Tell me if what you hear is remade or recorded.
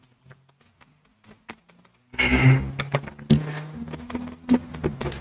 recorded